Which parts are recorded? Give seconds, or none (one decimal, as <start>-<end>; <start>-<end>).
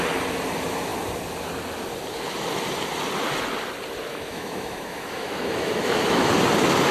0.0-4.1; 6.3-6.9